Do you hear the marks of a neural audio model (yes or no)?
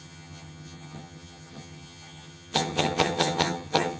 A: yes